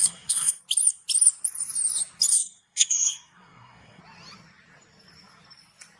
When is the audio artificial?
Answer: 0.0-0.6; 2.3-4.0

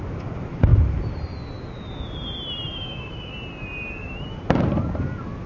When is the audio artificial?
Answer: 2.7-3.3

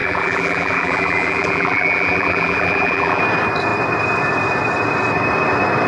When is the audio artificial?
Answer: 0.0-3.2